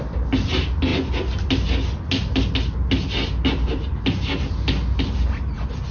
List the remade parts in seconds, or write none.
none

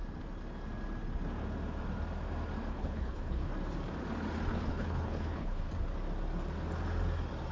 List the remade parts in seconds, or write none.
2.7-3.5; 4.5-5.7